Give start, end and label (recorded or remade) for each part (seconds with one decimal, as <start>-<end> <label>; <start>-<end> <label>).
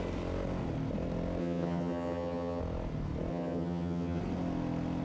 0.0-1.4 recorded; 1.4-2.6 remade; 2.6-3.3 recorded; 3.3-4.2 remade; 4.2-5.0 recorded